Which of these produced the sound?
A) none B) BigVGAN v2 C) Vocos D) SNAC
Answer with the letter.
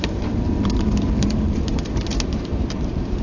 B